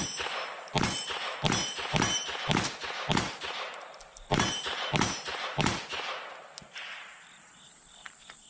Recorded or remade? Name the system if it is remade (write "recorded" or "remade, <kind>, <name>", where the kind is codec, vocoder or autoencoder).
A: recorded